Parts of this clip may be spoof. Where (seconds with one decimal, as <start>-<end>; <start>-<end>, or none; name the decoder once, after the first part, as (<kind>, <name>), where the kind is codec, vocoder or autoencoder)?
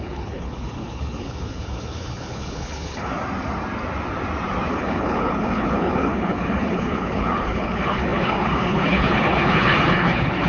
0.0-3.1 (codec, HILCodec); 4.7-10.5